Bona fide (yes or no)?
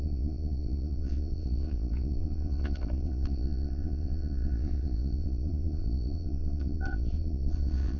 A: no